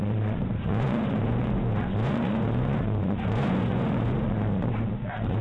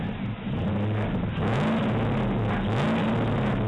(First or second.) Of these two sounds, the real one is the second